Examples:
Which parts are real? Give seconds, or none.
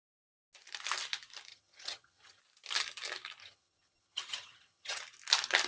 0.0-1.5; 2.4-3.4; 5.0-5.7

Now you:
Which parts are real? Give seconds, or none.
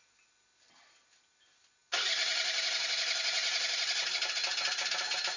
0.0-5.4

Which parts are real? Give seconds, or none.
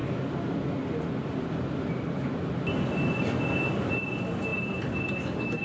0.0-5.6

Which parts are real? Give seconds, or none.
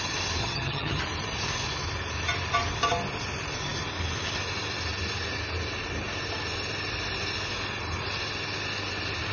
0.0-0.4; 1.0-9.3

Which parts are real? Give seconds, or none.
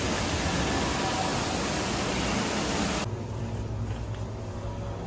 0.0-5.1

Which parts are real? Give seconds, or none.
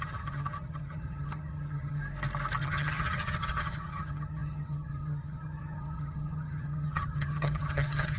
2.0-2.6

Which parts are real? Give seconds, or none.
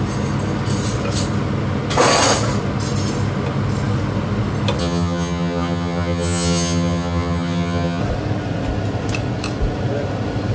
0.0-4.8; 8.0-10.5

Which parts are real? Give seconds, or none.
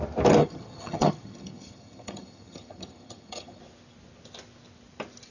0.0-0.4; 3.6-5.3